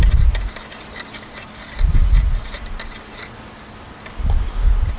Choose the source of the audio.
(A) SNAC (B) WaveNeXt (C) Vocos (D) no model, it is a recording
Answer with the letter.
D